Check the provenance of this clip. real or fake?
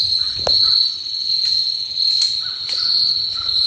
real